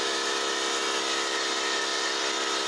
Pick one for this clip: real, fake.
real